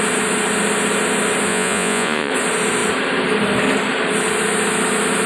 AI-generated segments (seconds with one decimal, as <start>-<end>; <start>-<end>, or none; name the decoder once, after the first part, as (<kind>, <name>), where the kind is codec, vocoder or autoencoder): 1.5-2.3 (vocoder, Vocos)

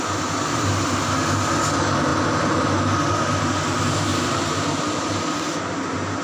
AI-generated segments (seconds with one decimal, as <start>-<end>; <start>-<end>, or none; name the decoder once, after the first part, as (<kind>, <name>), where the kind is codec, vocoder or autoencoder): 4.1-5.1 (vocoder, BigVGAN v2)

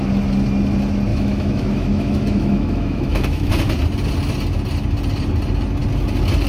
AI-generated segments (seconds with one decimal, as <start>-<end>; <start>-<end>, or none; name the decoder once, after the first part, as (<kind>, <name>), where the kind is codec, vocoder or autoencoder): 1.1-3.5 (autoencoder, DAC-VAE)